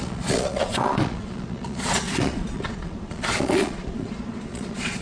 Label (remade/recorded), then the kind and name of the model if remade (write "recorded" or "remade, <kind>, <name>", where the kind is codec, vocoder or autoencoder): remade, vocoder, Vocos